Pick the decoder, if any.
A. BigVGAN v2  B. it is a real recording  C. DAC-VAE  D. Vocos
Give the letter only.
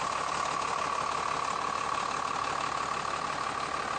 B